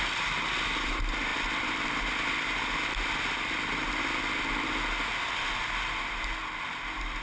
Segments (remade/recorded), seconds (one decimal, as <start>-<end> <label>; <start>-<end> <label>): 0.0-7.2 recorded